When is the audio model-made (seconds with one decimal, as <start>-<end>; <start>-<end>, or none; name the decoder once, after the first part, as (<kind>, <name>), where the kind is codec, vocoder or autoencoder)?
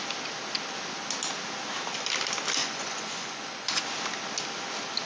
2.6-3.8 (vocoder, Vocos)